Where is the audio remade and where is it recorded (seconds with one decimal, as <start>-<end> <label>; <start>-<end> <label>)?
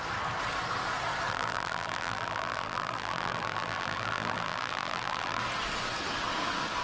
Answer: 0.0-1.3 recorded; 1.3-5.4 remade; 5.4-6.8 recorded